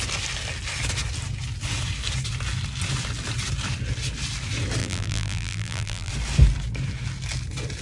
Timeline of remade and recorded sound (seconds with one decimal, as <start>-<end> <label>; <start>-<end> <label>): 0.0-4.8 recorded; 4.8-6.1 remade; 6.1-7.8 recorded